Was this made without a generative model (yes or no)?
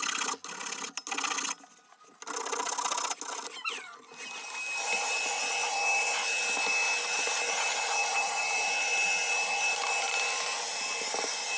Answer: yes